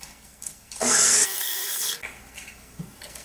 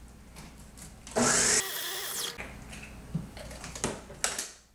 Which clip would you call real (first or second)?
second